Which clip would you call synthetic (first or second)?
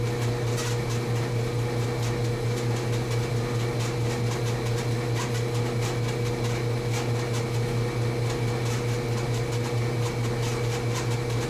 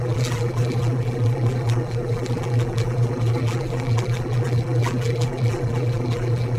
second